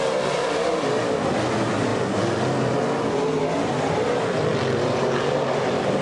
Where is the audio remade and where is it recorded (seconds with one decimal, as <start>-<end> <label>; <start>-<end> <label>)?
0.0-6.0 recorded